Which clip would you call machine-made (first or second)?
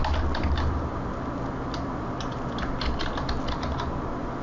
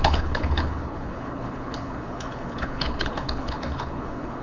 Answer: second